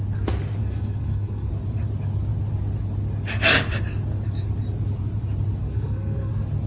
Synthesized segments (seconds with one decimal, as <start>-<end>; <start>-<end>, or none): 0.6-1.5; 5.6-6.3